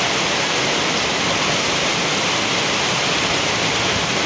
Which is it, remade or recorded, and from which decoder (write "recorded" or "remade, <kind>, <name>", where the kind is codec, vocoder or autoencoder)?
recorded